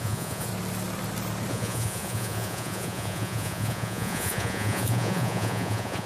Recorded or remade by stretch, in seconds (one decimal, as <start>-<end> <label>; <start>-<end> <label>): 0.0-0.5 remade; 0.5-1.5 recorded; 1.5-6.1 remade